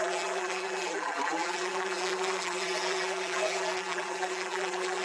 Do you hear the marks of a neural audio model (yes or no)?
yes